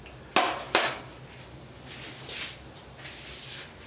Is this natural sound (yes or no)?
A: yes